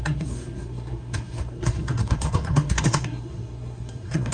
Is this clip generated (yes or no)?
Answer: yes